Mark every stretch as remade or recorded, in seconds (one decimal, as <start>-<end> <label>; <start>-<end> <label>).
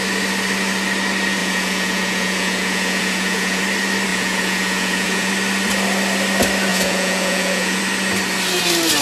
0.0-1.4 recorded; 1.4-3.6 remade; 3.6-4.1 recorded; 4.1-5.3 remade; 5.3-6.7 recorded; 6.7-7.8 remade; 7.8-9.0 recorded